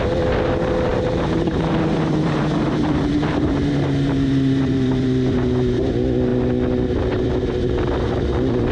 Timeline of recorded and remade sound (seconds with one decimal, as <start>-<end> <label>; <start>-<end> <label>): 0.0-0.9 recorded; 0.9-5.8 remade; 5.8-8.7 recorded